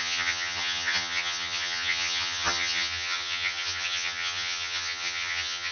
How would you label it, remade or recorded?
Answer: remade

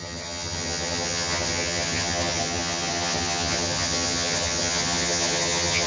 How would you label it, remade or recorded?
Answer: remade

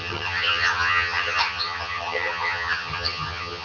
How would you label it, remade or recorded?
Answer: remade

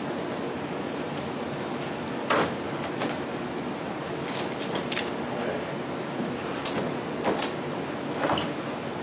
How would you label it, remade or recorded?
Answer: recorded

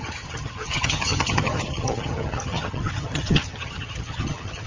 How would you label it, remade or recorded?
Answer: remade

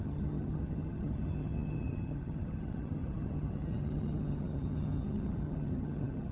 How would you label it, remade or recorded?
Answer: remade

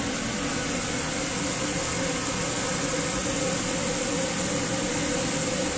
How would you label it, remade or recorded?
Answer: recorded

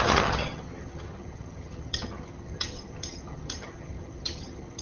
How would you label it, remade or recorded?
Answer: remade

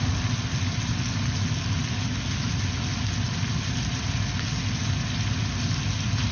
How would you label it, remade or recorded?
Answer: recorded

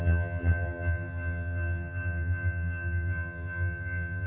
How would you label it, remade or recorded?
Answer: remade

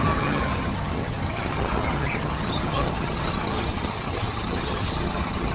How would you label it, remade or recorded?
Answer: remade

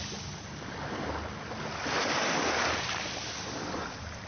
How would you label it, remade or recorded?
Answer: recorded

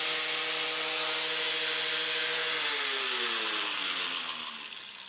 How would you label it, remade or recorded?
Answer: recorded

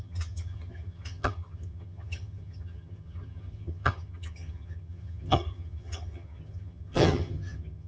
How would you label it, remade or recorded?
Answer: remade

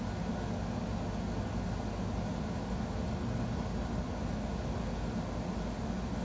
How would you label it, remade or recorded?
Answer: recorded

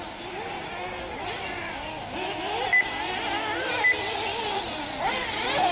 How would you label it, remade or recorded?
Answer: recorded